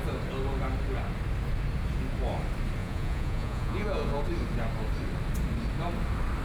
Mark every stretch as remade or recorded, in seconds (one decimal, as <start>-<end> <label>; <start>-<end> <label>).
0.0-2.8 recorded; 2.8-4.2 remade; 4.2-6.4 recorded